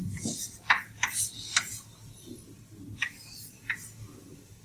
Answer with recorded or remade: recorded